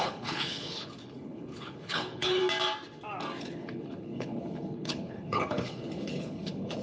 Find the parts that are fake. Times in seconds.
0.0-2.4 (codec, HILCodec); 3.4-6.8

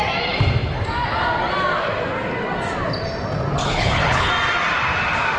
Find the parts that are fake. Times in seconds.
3.6-4.3 (codec, HILCodec)

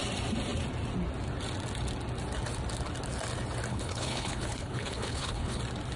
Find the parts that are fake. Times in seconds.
3.7-5.6 (codec, HILCodec)

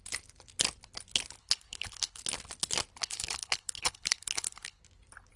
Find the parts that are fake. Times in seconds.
1.4-2.2 (codec, HILCodec); 3.0-4.8